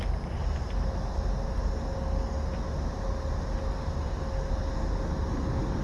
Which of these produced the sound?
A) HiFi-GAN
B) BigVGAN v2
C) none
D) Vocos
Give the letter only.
C